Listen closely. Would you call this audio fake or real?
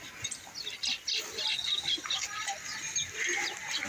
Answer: real